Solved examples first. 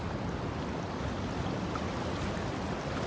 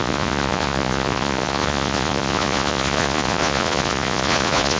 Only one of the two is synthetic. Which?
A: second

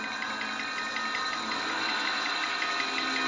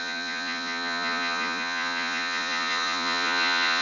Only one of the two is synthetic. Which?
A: second